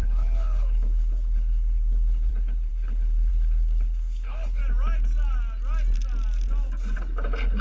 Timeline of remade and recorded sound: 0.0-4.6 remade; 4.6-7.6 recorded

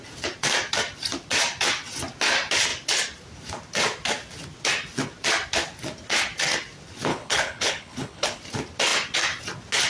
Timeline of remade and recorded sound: 0.0-7.1 recorded; 7.1-8.4 remade; 8.4-9.9 recorded

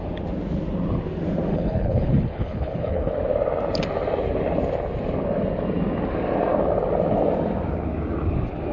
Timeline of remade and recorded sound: 0.0-1.5 recorded; 1.5-3.1 remade; 3.1-8.7 recorded